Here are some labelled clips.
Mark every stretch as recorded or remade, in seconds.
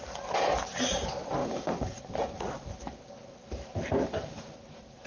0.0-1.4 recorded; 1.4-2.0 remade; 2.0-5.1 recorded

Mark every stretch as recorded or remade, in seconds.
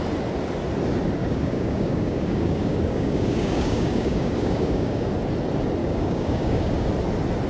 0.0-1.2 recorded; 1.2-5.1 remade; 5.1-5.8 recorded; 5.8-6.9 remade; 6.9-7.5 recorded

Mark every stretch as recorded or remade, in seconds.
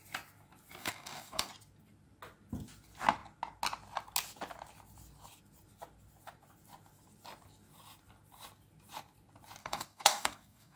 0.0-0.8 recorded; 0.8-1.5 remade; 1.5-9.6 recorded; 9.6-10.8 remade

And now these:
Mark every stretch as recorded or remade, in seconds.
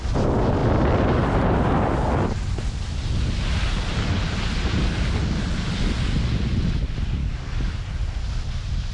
0.0-7.2 recorded; 7.2-7.8 remade; 7.8-8.9 recorded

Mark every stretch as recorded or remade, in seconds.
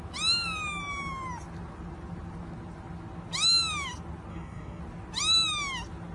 0.0-4.3 recorded; 4.3-4.8 remade; 4.8-6.1 recorded